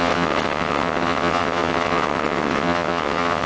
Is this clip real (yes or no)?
no